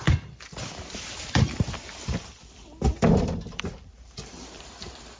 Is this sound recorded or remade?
remade